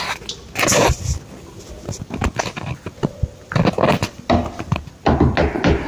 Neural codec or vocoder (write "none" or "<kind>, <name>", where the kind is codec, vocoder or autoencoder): none